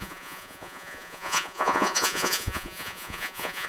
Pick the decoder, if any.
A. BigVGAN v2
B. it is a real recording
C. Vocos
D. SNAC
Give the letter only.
C